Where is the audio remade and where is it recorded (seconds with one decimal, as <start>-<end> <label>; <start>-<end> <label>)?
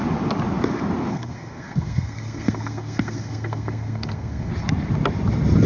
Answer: 0.0-1.1 recorded; 1.1-4.5 remade; 4.5-5.7 recorded